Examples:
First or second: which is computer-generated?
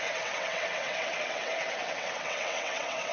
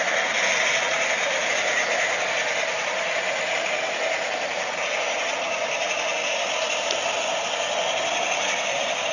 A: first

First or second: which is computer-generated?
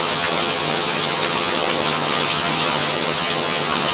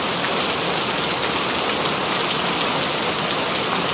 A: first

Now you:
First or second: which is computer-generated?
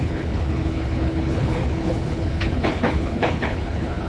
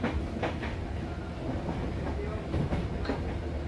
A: first